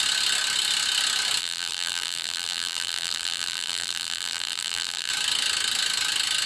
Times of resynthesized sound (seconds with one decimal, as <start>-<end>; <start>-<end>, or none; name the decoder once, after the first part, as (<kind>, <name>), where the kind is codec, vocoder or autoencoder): 1.4-5.1 (vocoder, BigVGAN v2)